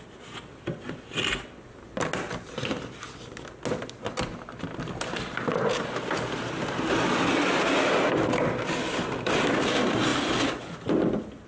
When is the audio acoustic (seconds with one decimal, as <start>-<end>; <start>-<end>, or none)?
0.0-11.5